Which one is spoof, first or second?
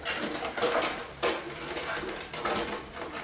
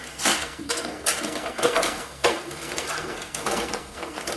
second